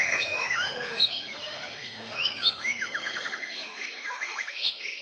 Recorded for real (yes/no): no